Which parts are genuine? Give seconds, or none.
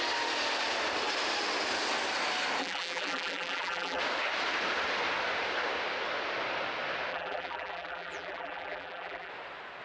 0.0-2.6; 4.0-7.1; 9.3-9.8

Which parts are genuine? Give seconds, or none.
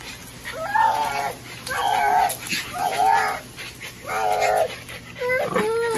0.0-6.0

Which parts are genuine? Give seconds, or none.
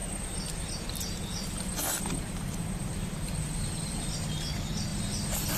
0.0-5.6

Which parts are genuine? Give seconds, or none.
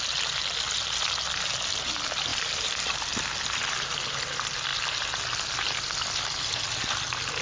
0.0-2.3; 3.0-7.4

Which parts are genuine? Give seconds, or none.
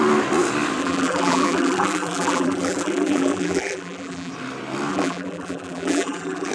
0.0-0.8; 4.3-4.9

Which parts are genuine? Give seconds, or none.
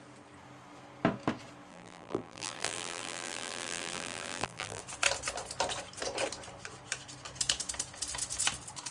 0.0-1.7; 4.8-8.9